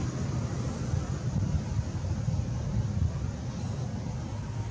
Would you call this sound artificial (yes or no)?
no